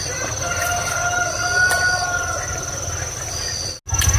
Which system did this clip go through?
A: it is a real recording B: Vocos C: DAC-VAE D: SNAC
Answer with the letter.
A